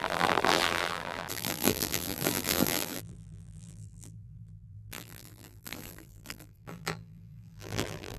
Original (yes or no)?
no